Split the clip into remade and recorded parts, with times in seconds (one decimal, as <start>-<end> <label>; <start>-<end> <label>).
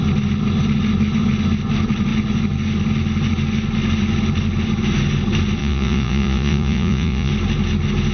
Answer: 0.0-5.6 recorded; 5.6-7.3 remade; 7.3-8.1 recorded